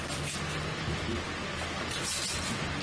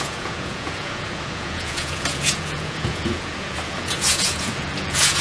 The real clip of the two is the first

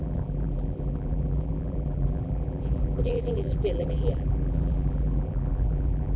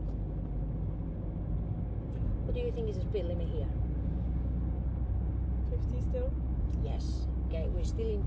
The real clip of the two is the second